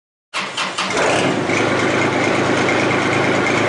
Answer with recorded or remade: recorded